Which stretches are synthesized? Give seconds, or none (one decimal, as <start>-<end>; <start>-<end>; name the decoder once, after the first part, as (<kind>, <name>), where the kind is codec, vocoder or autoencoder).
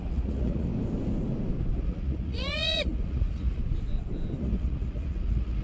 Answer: 0.0-0.7 (vocoder, Vocos); 1.8-3.6; 4.4-5.6